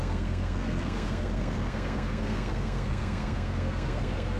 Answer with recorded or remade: remade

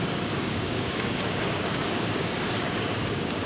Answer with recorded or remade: remade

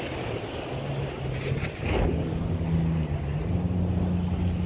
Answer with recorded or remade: recorded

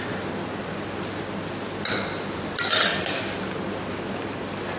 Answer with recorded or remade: recorded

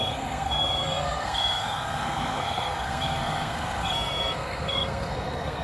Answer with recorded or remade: remade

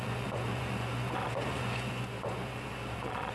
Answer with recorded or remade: remade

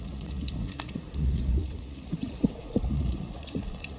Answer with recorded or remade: remade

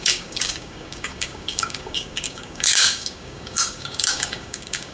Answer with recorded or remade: remade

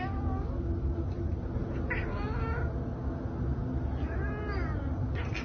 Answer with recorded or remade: recorded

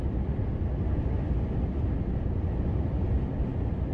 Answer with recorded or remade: recorded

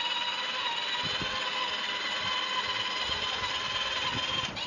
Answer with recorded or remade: recorded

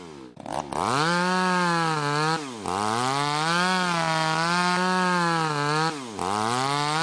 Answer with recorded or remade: recorded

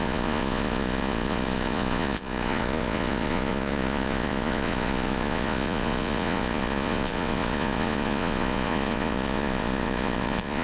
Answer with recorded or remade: remade